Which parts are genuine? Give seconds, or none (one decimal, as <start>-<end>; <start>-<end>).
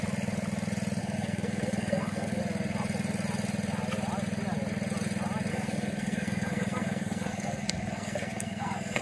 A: 0.0-1.0; 2.4-5.5